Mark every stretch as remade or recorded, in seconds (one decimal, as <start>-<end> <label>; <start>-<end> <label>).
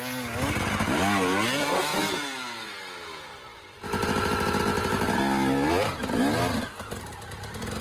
0.0-1.9 recorded; 1.9-3.6 remade; 3.6-7.8 recorded